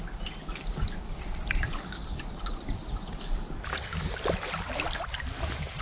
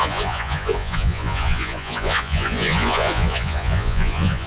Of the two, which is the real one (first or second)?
first